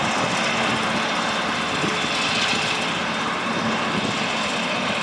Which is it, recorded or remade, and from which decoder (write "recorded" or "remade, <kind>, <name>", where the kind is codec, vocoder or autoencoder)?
recorded